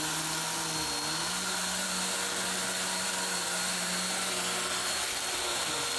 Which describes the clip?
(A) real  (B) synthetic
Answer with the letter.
A